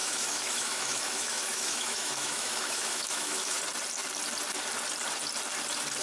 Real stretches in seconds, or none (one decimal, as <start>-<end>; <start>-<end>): 3.6-6.0